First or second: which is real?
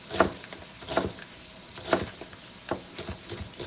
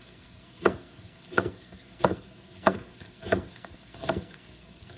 first